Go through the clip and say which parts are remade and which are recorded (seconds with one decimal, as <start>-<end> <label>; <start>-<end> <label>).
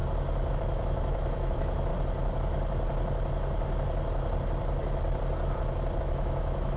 0.0-0.5 recorded; 0.5-1.9 remade; 1.9-6.0 recorded; 6.0-6.8 remade